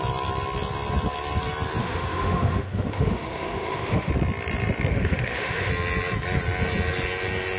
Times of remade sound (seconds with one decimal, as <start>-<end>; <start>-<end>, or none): 1.8-4.1; 4.9-5.7